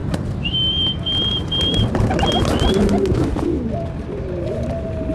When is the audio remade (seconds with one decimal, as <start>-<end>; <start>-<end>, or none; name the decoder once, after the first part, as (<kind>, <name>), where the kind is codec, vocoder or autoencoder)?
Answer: none